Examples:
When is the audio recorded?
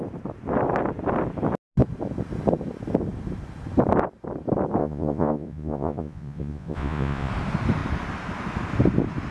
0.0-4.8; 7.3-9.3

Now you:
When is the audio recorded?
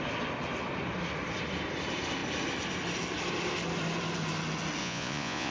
0.0-4.8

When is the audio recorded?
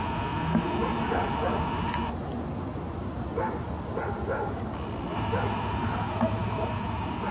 0.0-5.1; 6.6-7.3